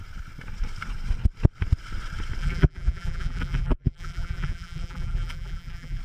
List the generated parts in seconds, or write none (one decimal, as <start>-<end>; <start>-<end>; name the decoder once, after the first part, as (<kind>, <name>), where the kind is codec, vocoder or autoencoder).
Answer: 2.4-6.0 (vocoder, BigVGAN v2)